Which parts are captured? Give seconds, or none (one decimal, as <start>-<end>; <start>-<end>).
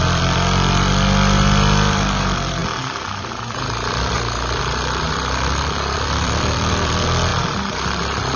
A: 2.6-4.6